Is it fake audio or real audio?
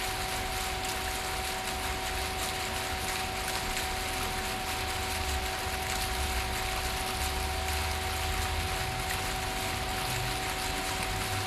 real